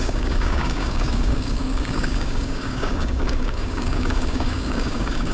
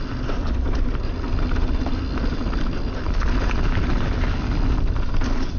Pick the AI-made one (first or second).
first